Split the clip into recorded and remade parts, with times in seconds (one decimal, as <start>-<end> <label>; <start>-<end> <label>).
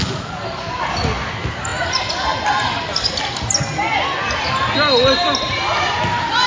0.0-6.5 recorded